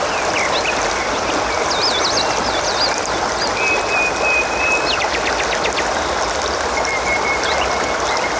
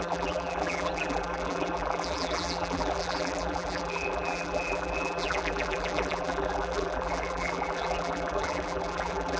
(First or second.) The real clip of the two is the first